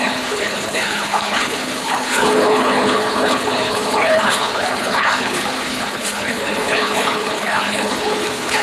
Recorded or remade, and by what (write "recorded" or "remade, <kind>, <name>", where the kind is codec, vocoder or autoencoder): remade, codec, HILCodec